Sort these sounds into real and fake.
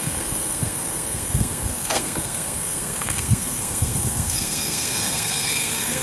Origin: fake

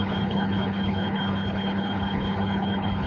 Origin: fake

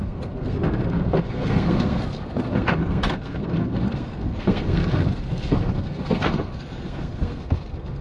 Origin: fake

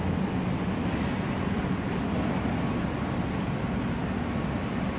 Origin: real